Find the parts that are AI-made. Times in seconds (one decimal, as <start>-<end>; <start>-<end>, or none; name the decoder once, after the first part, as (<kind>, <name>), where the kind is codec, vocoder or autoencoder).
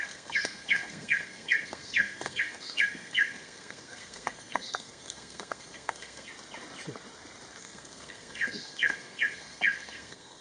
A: 0.0-6.3 (codec, SNAC); 7.6-10.4